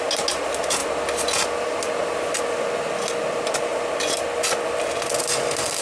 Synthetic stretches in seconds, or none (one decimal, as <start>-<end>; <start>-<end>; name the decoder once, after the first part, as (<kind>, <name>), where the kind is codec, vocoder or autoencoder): none